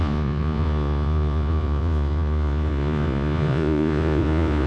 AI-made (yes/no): yes